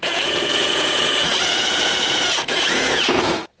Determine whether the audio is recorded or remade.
remade